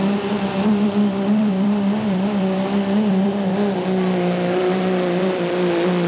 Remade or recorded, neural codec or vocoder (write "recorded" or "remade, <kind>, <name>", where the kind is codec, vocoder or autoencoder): remade, vocoder, BigVGAN v2